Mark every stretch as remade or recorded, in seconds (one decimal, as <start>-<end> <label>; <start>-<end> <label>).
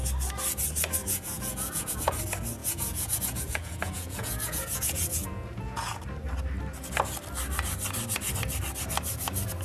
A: 0.0-1.0 recorded; 1.0-2.2 remade; 2.2-2.6 recorded; 2.6-6.0 remade; 6.0-9.6 recorded